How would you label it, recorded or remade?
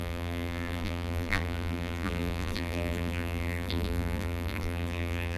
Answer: remade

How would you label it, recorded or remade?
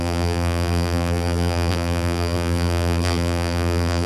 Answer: remade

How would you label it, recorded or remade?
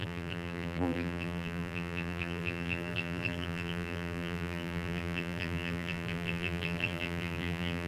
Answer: remade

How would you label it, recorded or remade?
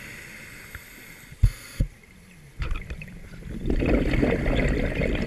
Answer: recorded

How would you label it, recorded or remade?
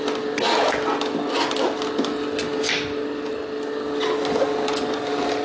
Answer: recorded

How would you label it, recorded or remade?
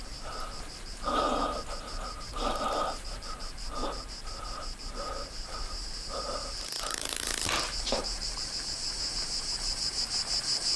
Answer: remade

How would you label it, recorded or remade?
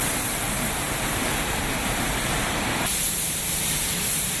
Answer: remade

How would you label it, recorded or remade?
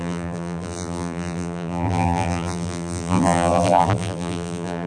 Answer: remade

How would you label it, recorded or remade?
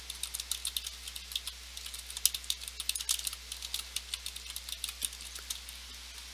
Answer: recorded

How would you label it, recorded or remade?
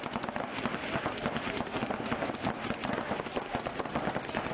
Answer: recorded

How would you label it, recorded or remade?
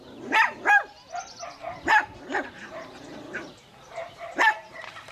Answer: remade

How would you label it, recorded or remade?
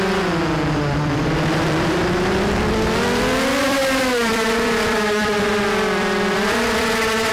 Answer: remade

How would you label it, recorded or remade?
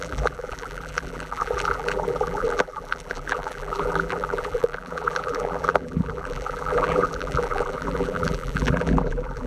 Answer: remade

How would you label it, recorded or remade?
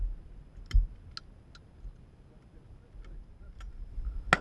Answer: recorded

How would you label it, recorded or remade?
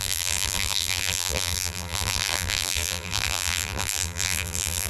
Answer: remade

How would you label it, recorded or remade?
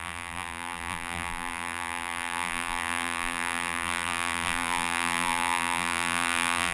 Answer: remade